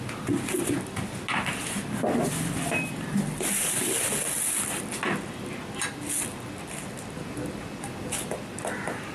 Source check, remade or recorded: recorded